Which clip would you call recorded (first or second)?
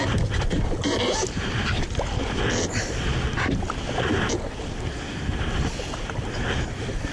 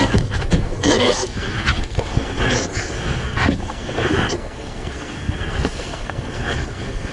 first